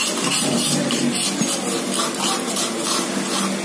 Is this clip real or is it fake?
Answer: real